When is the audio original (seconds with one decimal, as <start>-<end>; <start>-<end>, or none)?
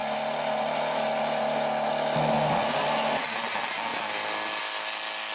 0.0-5.3